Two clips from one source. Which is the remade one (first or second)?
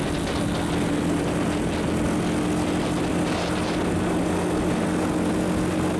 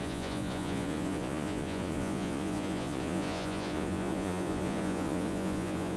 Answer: second